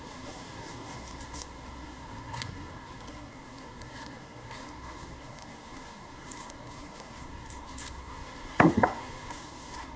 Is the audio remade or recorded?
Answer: remade